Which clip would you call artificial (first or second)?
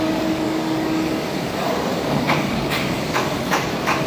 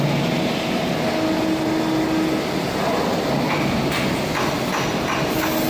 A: first